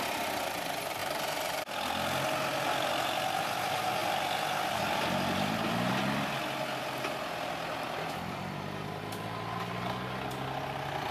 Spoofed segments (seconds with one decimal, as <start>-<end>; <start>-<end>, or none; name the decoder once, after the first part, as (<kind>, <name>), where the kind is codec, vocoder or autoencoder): none